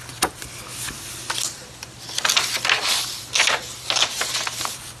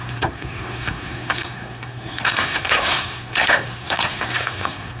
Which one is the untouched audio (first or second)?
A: first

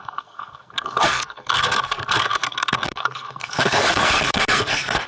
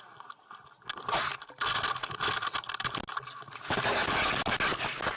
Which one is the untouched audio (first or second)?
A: second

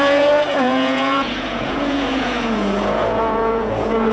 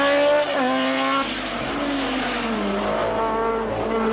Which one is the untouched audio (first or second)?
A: second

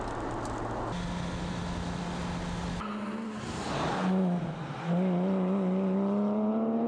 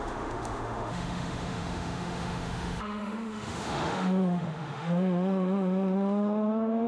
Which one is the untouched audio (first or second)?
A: first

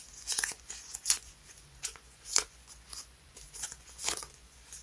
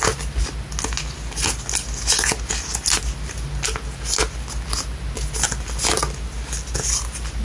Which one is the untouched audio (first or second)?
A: second